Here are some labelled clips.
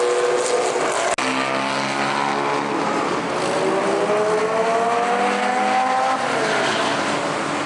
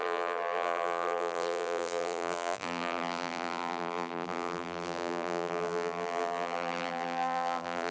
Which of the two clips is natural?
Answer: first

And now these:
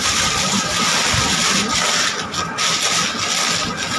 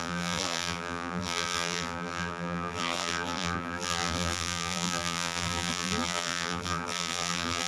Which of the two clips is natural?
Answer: first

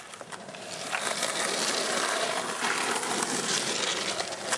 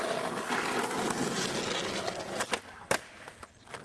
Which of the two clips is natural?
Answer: second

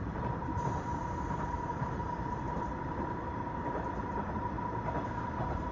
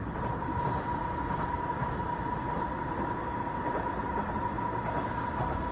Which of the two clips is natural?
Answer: second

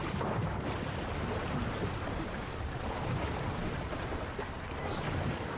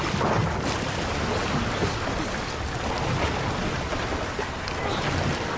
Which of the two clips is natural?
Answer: second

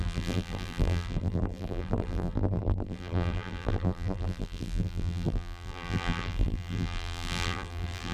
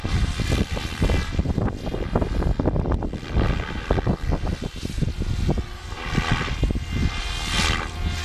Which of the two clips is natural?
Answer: second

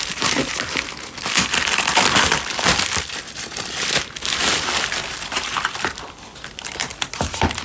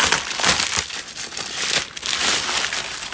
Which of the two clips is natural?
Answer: second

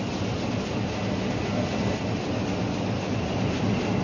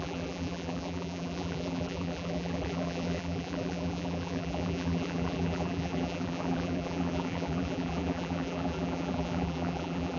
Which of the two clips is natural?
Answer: first